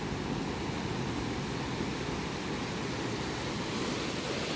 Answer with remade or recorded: recorded